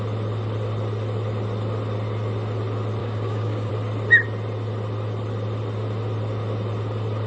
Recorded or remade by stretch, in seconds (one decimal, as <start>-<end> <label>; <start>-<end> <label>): 0.0-3.0 recorded; 3.0-3.7 remade; 3.7-7.3 recorded